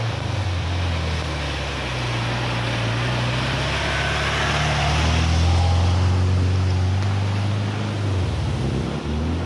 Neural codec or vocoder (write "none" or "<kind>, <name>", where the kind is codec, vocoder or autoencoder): none